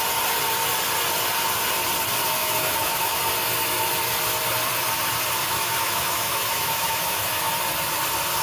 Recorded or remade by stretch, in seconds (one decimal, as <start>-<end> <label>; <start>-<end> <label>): 0.0-2.4 recorded; 2.4-3.2 remade; 3.2-5.4 recorded; 5.4-7.5 remade; 7.5-8.4 recorded

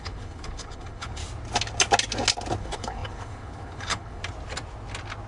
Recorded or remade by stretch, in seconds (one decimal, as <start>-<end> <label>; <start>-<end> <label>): 0.0-1.2 remade; 1.2-2.6 recorded; 2.6-4.2 remade; 4.2-5.3 recorded